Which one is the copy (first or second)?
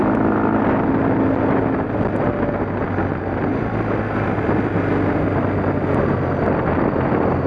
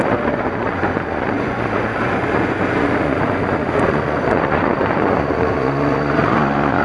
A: second